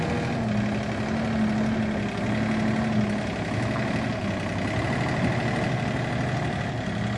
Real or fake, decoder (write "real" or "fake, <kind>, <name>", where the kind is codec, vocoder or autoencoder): real